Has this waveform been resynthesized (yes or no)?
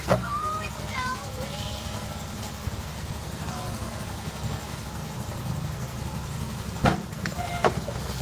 yes